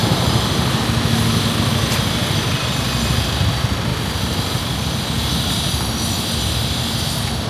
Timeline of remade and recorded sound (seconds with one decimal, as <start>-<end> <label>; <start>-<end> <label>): 0.0-7.5 recorded